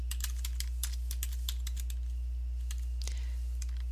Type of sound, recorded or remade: recorded